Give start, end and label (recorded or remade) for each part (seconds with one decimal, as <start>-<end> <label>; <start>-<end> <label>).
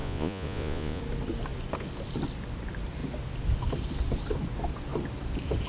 0.0-1.0 remade; 1.0-5.7 recorded